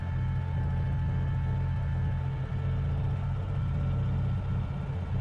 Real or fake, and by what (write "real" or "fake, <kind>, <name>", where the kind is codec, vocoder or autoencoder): real